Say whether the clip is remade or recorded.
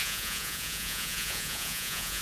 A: remade